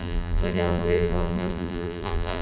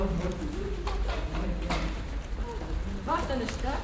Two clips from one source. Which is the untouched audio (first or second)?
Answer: second